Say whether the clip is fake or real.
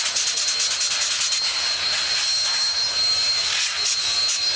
real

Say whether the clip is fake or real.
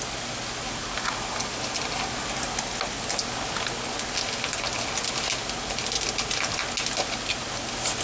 real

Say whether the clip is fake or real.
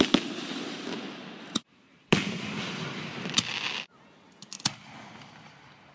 real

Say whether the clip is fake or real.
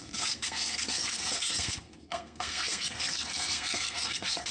fake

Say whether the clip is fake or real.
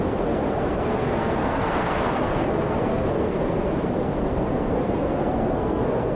fake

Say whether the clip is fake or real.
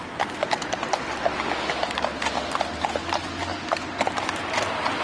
real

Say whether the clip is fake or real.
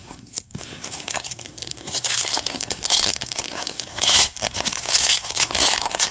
fake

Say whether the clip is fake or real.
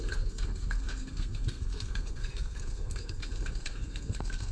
fake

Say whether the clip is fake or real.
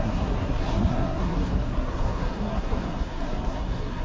fake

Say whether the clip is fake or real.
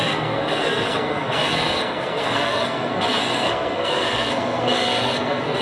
fake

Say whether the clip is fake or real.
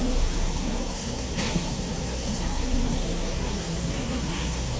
fake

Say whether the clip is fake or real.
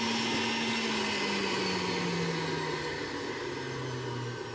real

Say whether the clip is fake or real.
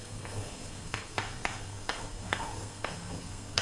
fake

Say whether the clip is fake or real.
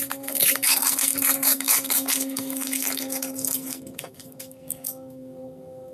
fake